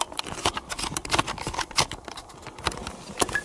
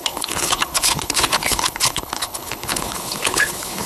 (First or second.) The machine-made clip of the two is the second